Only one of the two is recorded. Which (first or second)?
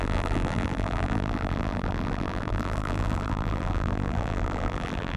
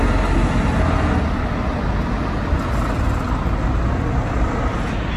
second